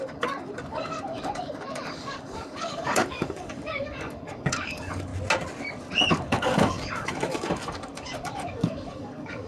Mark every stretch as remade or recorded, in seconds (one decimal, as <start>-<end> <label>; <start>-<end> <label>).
0.0-5.1 remade; 5.1-6.1 recorded; 6.1-9.5 remade